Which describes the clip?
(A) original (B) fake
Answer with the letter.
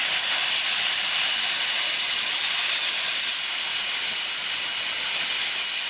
A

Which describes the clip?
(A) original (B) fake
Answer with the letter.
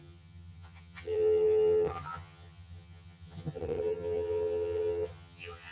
B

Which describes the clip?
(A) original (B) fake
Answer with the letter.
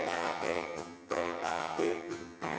B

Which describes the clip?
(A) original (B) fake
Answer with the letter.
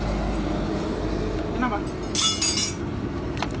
A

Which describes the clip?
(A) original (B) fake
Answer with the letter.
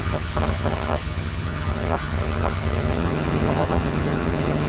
B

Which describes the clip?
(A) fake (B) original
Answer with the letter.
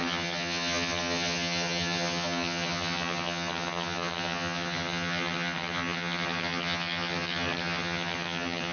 A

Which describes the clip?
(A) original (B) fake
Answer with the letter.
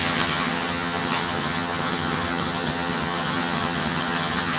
B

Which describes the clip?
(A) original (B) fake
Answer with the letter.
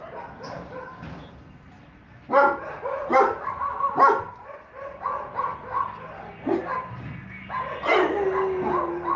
A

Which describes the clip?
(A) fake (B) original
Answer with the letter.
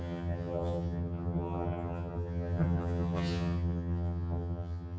A